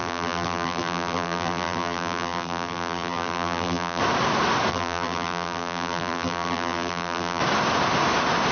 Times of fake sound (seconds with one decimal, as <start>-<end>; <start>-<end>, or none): 0.0-4.0; 4.7-7.4